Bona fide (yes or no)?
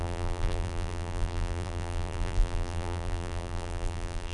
no